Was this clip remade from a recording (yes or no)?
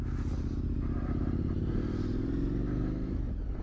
no